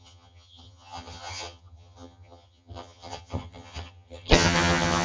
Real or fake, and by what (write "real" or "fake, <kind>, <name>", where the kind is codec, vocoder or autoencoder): fake, vocoder, HiFi-GAN